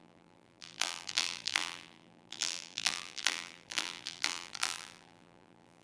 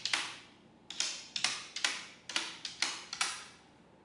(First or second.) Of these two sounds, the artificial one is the first